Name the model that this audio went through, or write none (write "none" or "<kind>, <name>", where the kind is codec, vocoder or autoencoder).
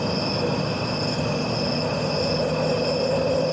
none